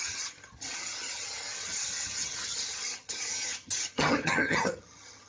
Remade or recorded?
remade